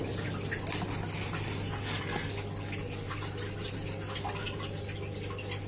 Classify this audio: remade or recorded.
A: recorded